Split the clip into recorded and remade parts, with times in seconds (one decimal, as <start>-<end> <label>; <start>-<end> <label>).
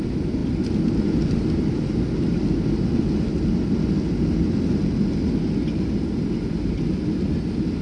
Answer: 0.0-7.8 recorded